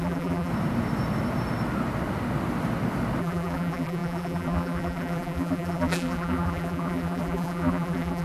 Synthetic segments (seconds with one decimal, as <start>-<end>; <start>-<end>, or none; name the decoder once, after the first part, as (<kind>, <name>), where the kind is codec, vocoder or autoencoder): 0.0-0.5 (vocoder, BigVGAN v2); 3.2-8.2